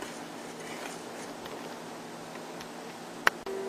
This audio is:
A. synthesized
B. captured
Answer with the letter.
B